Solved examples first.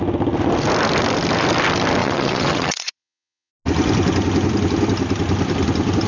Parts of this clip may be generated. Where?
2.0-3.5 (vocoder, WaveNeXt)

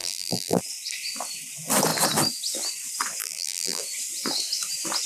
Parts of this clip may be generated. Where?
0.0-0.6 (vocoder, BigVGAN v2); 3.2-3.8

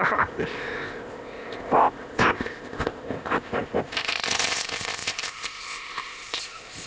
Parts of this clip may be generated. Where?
0.0-6.9 (codec, ZipCodec)